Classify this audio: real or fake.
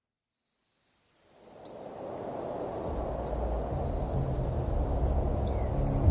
real